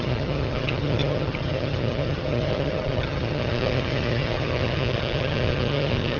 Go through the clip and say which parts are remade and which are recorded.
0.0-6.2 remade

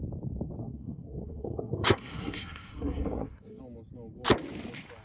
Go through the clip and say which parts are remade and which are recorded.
0.0-0.6 recorded; 0.6-3.6 remade; 3.6-5.0 recorded

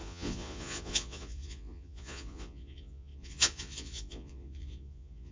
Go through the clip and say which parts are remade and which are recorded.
0.0-5.3 remade

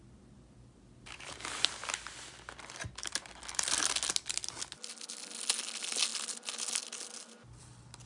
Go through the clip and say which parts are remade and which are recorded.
0.0-8.1 recorded

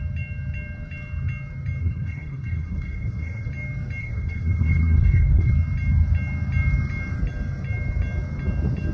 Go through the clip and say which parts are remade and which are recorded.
0.0-1.8 recorded; 1.8-3.5 remade; 3.5-4.0 recorded; 4.0-5.5 remade; 5.5-8.9 recorded

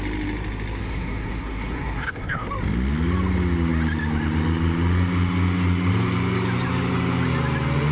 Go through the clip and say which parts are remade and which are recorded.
0.0-0.8 recorded; 0.8-2.5 remade; 2.5-7.9 recorded

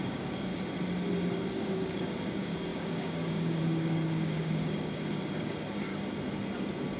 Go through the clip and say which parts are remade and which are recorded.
0.0-0.5 remade; 0.5-1.4 recorded; 1.4-5.9 remade; 5.9-7.0 recorded

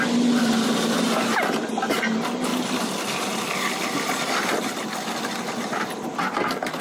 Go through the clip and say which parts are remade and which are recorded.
0.0-2.5 recorded; 2.5-6.8 remade